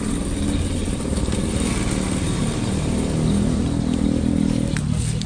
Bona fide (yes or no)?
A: yes